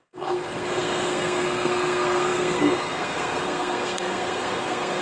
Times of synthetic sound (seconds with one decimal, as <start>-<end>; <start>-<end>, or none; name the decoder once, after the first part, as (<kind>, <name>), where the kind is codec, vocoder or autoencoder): 0.0-5.0 (codec, SNAC)